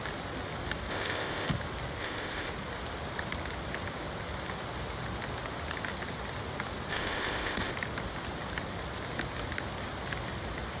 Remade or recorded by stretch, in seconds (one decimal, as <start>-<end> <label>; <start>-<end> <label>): 0.0-0.9 recorded; 0.9-1.5 remade; 1.5-2.0 recorded; 2.0-2.5 remade; 2.5-6.9 recorded; 6.9-7.7 remade; 7.7-10.8 recorded